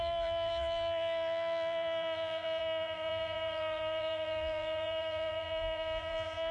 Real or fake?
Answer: fake